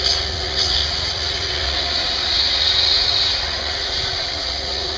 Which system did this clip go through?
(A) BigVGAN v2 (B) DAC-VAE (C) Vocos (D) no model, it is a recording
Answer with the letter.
C